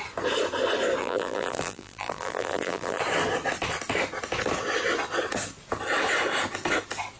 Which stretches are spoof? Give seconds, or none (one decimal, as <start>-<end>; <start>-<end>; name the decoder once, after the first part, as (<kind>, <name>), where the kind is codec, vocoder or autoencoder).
1.0-3.0 (vocoder, BigVGAN v2)